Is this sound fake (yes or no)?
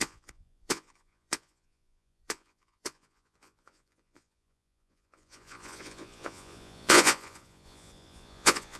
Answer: yes